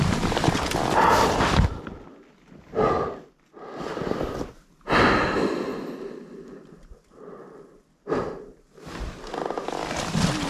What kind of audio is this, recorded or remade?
recorded